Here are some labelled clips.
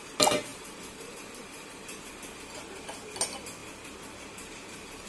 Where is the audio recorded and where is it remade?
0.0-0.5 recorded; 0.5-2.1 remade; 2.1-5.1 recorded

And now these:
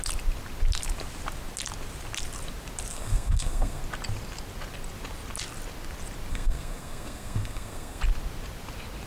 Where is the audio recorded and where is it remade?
0.0-2.9 recorded; 2.9-3.8 remade; 3.8-6.3 recorded; 6.3-8.0 remade; 8.0-9.1 recorded

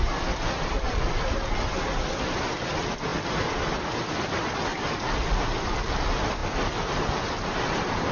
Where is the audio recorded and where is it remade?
0.0-4.7 recorded; 4.7-5.9 remade; 5.9-8.1 recorded